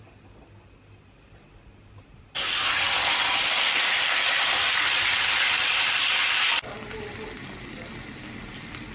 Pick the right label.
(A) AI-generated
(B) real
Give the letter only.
B